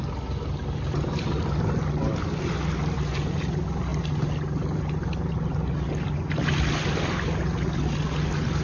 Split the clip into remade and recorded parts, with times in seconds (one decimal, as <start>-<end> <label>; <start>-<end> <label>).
0.0-8.6 recorded